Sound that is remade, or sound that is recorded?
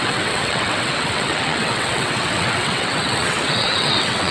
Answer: remade